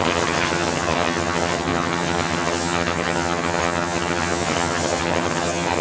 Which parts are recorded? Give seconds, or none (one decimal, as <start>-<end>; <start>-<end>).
none